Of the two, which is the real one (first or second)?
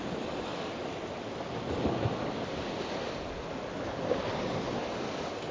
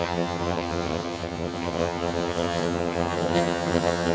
first